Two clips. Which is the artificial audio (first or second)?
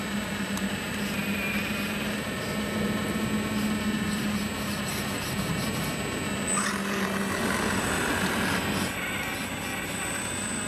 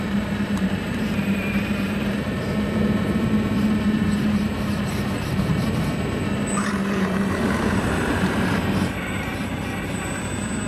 second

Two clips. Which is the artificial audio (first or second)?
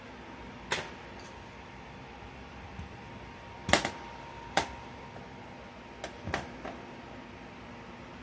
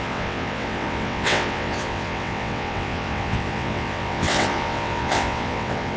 second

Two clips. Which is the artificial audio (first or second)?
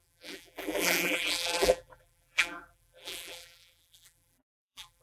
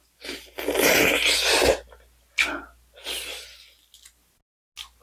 first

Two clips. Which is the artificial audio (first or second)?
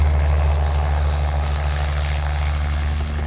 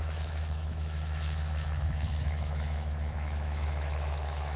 second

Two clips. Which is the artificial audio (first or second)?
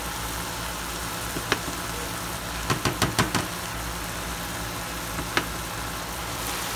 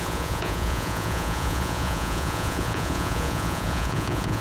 second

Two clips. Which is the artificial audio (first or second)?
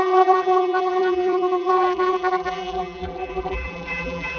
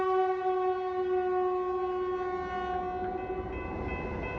first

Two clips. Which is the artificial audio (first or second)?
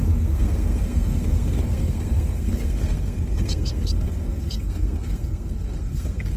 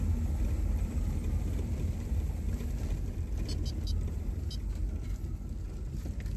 first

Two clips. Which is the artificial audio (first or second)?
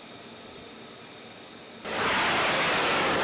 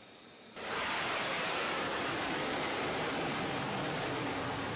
second